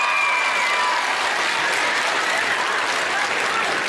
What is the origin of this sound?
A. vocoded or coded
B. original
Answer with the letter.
B